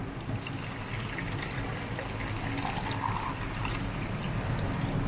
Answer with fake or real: real